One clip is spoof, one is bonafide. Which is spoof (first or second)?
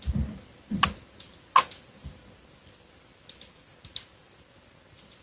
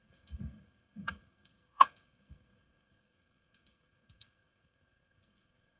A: second